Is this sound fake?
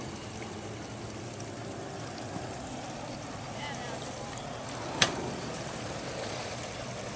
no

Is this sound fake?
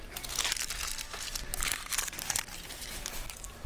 no